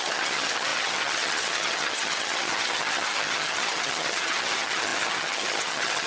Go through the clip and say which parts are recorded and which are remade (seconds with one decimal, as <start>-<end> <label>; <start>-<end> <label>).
0.0-6.1 remade